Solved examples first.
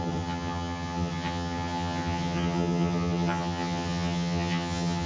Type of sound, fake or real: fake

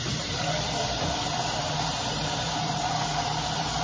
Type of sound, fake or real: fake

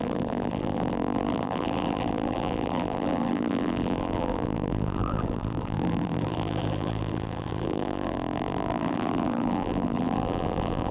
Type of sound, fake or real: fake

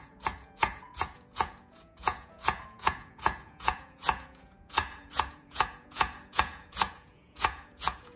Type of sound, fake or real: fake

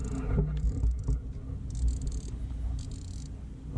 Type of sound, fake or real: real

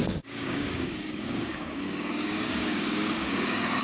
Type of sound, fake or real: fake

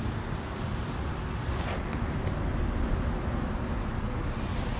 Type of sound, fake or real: real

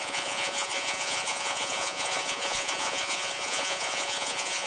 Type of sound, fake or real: fake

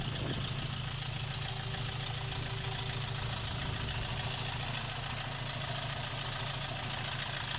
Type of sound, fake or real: real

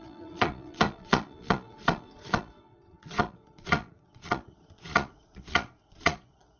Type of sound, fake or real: fake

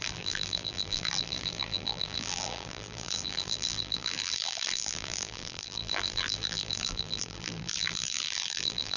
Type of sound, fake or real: fake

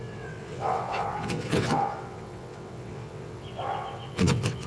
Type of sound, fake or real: fake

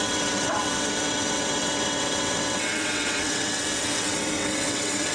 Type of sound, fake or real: fake